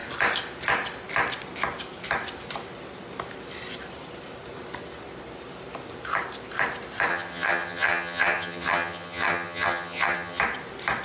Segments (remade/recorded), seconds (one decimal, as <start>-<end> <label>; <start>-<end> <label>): 0.0-7.1 recorded; 7.1-10.4 remade; 10.4-11.0 recorded